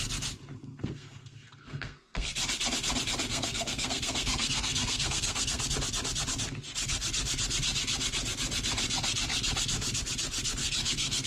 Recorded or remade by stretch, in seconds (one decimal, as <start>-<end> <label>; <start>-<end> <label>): 0.0-0.7 recorded; 0.7-2.3 remade; 2.3-3.3 recorded; 3.3-5.6 remade; 5.6-10.6 recorded; 10.6-11.3 remade